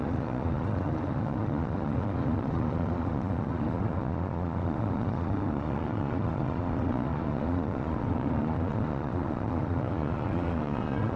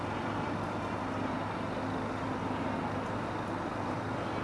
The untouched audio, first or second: second